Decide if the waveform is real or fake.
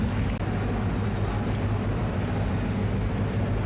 real